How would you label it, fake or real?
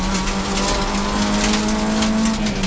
real